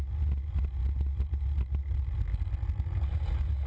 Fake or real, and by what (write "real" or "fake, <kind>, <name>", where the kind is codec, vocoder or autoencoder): real